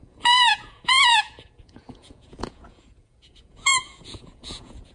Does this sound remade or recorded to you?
remade